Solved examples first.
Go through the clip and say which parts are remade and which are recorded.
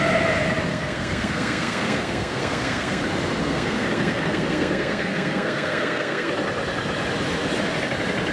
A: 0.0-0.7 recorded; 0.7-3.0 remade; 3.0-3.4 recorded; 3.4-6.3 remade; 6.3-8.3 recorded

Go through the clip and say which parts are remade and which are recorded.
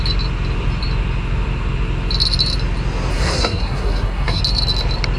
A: 0.0-3.1 recorded; 3.1-4.4 remade; 4.4-5.2 recorded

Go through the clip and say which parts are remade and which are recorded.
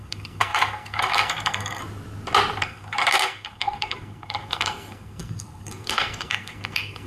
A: 0.0-1.8 remade; 1.8-2.6 recorded; 2.6-7.1 remade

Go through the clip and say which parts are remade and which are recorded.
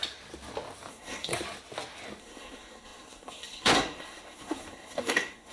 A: 0.0-0.9 recorded; 0.9-1.3 remade; 1.3-2.2 recorded; 2.2-5.5 remade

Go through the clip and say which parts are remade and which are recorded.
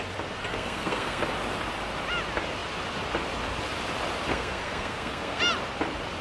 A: 0.0-0.5 recorded; 0.5-1.2 remade; 1.2-4.3 recorded; 4.3-5.4 remade; 5.4-6.2 recorded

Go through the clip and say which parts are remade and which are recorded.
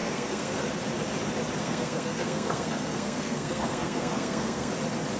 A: 0.0-0.7 remade; 0.7-1.6 recorded; 1.6-4.7 remade; 4.7-5.2 recorded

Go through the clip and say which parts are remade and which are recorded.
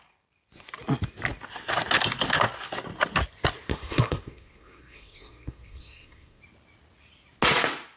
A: 0.0-3.7 recorded; 3.7-6.4 remade; 6.4-8.0 recorded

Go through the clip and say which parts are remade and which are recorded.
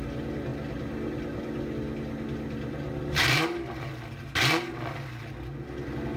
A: 0.0-6.2 recorded